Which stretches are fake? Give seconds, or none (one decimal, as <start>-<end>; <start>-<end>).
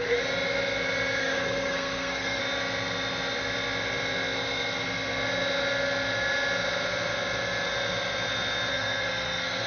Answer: 1.2-2.4; 8.7-9.7